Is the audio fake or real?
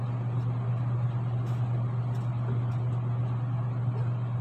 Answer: real